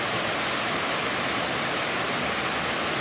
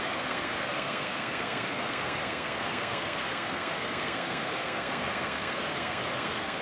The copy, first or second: second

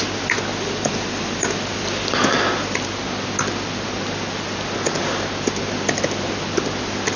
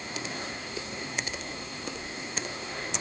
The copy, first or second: second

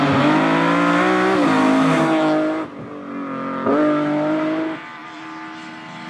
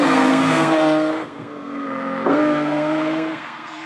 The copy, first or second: second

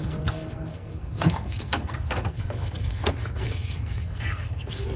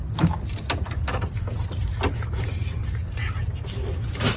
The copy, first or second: first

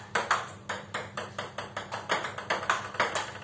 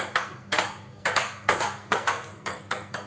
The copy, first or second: second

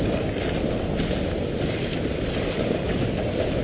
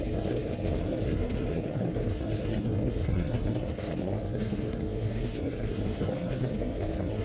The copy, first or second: second